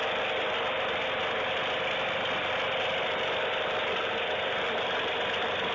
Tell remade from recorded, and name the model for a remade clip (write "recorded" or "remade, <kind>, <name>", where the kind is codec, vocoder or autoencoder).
recorded